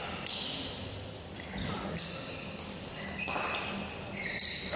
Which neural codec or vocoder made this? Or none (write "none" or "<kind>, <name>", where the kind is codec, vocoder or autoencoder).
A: none